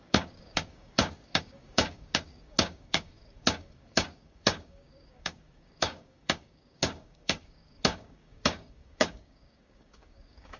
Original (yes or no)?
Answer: no